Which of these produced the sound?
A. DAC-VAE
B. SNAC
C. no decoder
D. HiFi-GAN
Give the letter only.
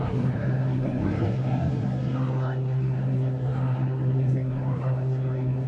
B